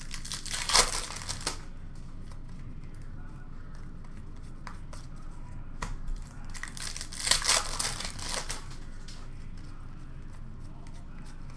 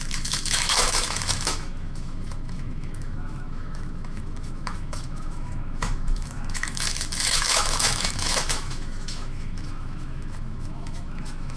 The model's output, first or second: second